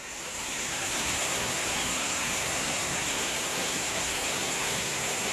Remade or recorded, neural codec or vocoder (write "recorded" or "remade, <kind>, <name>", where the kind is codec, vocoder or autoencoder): remade, codec, SNAC